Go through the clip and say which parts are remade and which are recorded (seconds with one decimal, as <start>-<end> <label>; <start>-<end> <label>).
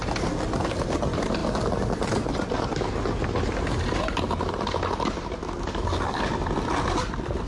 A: 0.0-5.4 recorded; 5.4-6.2 remade; 6.2-7.5 recorded